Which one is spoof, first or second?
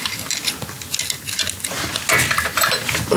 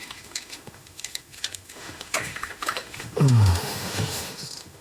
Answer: second